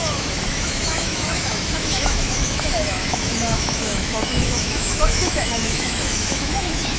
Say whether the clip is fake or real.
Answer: fake